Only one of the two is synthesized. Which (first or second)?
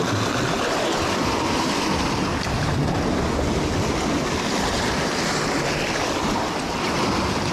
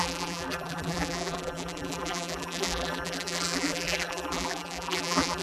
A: second